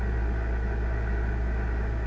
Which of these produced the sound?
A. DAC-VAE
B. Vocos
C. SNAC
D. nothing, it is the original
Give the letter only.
D